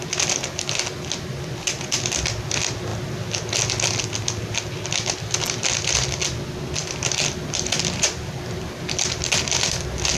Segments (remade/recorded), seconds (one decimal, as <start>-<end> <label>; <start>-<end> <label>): 0.0-6.8 recorded; 6.8-8.3 remade; 8.3-10.2 recorded